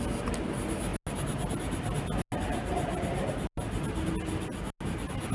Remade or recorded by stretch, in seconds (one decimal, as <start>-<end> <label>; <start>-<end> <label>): 0.0-5.3 recorded